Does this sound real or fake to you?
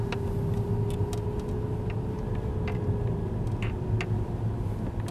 real